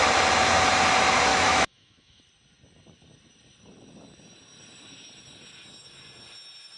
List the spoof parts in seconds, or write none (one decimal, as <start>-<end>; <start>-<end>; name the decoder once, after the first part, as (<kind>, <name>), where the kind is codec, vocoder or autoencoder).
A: 1.3-2.2 (autoencoder, DAC-VAE)